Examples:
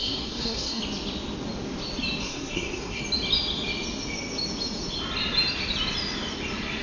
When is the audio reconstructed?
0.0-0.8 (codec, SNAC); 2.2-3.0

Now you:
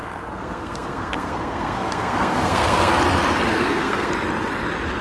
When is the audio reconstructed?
0.0-3.0 (codec, SNAC); 3.5-4.1